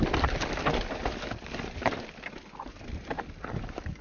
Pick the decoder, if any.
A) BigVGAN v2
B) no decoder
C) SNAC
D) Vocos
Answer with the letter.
B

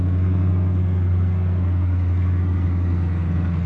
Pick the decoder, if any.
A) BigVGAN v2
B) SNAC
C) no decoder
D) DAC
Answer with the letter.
B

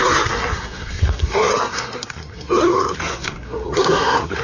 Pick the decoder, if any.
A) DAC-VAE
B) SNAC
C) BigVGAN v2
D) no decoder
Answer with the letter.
B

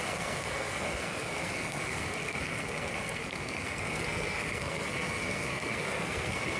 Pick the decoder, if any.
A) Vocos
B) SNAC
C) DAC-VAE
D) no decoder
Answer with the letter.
B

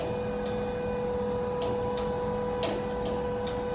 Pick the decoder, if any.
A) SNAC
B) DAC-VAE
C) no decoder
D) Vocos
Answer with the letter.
C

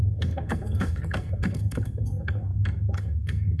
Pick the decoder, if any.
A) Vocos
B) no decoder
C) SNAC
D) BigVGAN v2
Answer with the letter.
C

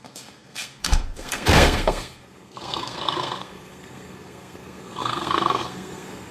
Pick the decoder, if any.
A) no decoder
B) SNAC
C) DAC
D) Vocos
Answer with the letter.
B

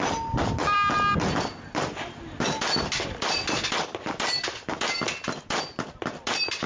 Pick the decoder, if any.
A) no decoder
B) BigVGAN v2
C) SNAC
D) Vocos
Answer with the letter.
A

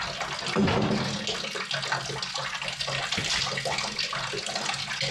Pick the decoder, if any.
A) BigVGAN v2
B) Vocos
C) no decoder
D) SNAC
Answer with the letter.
C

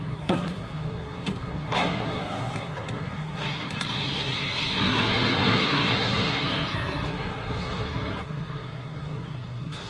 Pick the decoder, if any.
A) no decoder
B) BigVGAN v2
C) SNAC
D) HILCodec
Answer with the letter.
C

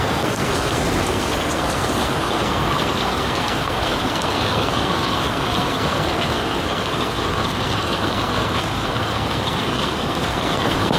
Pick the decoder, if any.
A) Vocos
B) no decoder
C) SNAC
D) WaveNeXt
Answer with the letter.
C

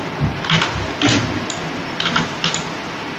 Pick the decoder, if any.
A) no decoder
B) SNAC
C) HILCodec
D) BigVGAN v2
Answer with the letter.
A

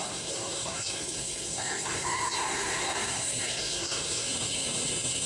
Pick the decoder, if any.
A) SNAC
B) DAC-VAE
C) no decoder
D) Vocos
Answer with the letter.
A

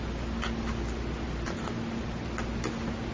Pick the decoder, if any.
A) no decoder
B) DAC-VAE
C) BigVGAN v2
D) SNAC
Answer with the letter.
A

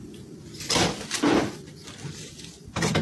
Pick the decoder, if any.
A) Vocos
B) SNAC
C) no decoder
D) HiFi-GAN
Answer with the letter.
C